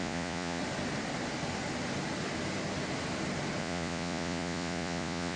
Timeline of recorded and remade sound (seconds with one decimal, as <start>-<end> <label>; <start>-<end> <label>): 0.0-0.6 remade; 0.6-3.6 recorded; 3.6-5.4 remade

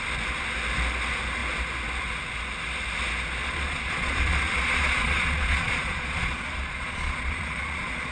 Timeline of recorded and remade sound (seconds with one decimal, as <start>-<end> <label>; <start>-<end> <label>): 0.0-3.4 recorded; 3.4-8.1 remade

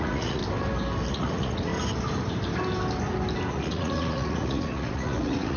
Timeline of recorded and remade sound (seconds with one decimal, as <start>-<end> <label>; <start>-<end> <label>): 0.0-0.4 remade; 0.4-1.1 recorded; 1.1-1.7 remade; 1.7-3.5 recorded; 3.5-5.6 remade

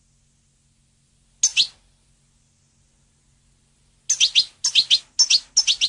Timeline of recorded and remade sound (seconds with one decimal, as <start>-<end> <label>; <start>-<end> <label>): 0.0-5.9 recorded

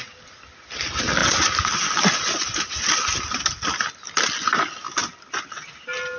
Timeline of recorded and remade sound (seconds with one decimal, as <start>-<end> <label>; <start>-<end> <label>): 0.0-6.2 recorded